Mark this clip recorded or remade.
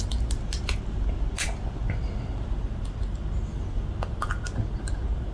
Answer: recorded